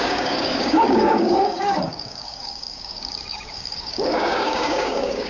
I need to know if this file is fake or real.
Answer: fake